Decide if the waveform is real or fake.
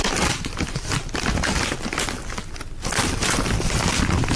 fake